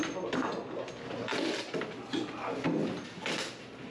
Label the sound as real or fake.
real